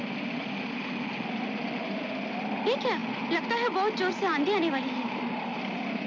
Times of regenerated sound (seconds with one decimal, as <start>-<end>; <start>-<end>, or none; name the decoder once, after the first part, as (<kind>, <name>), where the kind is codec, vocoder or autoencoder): none